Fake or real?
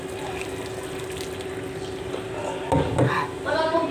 real